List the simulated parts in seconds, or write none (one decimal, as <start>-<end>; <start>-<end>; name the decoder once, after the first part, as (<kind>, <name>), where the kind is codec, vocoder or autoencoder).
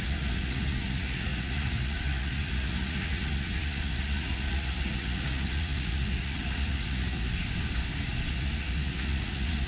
0.0-7.3 (vocoder, Vocos); 8.3-9.7